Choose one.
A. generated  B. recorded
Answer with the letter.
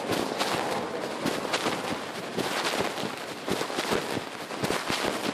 B